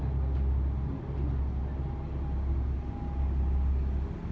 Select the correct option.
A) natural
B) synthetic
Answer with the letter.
A